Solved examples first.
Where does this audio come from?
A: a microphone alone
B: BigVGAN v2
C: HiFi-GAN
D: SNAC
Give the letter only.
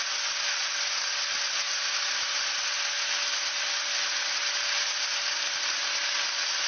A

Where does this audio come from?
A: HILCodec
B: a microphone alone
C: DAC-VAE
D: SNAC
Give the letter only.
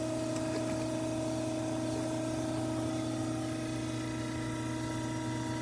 B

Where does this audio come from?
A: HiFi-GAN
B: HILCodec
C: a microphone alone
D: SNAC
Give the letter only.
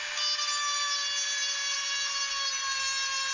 C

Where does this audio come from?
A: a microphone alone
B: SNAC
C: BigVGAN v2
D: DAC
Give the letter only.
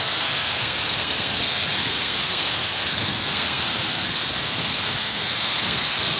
B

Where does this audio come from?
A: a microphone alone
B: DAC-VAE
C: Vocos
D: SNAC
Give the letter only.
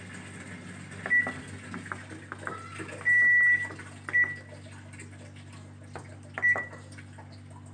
A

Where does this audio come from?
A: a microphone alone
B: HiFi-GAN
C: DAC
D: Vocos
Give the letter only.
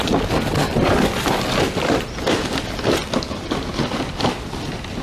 A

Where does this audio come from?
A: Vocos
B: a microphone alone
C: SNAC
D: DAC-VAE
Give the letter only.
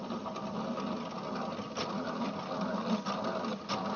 B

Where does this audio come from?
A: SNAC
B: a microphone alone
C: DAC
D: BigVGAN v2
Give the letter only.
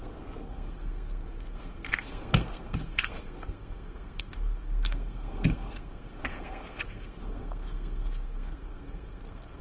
A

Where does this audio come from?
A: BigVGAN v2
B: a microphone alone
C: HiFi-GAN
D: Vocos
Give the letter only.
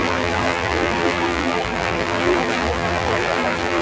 A